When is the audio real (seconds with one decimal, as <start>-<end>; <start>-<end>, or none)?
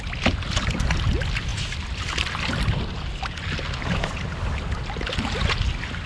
0.0-6.1